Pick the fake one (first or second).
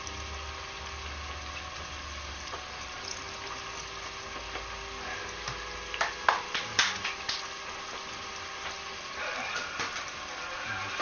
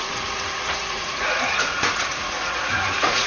second